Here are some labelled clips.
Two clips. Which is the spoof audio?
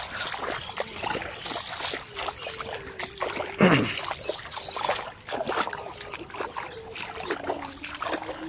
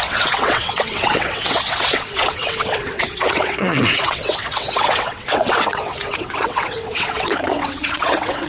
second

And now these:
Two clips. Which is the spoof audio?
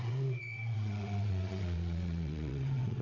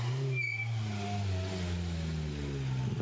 first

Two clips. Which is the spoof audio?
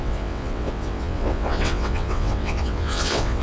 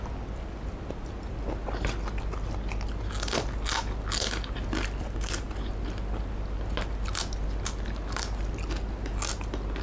first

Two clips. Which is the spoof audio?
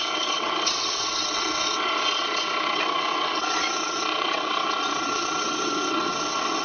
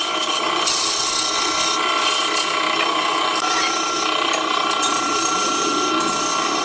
first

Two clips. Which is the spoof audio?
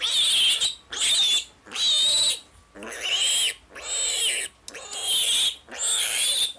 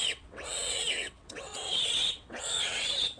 second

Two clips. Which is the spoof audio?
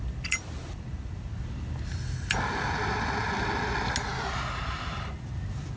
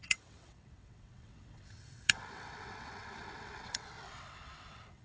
second